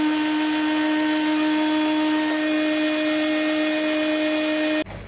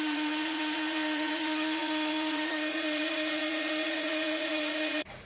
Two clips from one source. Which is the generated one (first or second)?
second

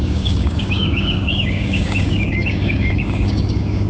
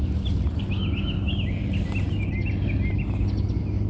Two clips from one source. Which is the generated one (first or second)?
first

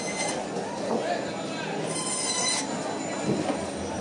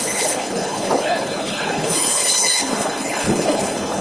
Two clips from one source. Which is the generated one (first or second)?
second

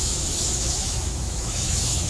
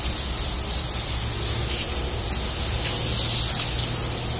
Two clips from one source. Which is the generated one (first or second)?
first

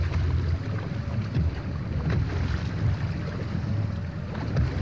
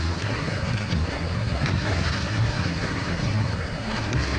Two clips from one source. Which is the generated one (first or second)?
second